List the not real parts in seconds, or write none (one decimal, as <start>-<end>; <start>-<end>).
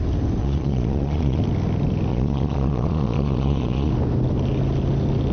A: 0.4-1.4; 2.1-3.9